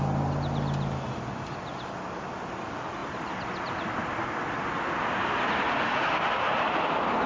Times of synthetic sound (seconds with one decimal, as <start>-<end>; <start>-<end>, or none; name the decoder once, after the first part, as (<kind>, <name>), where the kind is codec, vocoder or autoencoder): none